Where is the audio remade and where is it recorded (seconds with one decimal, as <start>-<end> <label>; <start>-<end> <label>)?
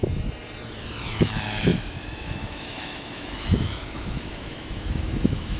0.0-1.0 recorded; 1.0-5.6 remade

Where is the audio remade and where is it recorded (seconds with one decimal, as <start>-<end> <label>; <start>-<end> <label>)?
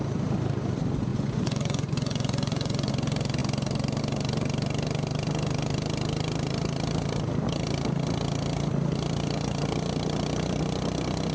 0.0-1.1 recorded; 1.1-2.9 remade; 2.9-11.3 recorded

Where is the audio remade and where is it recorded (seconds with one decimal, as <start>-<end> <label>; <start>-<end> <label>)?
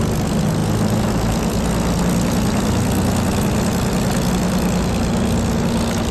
0.0-6.1 recorded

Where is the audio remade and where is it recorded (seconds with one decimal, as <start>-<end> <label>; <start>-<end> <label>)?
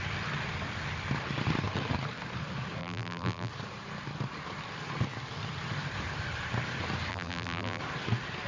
0.0-2.8 recorded; 2.8-3.5 remade; 3.5-7.1 recorded; 7.1-7.8 remade; 7.8-8.5 recorded